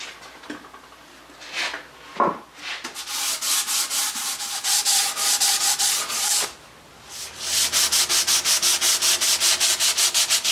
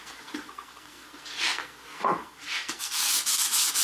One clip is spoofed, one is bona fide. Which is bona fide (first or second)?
first